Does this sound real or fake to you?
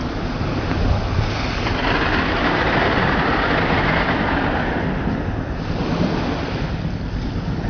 real